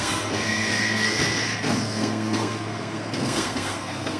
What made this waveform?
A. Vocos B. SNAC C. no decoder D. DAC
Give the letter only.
B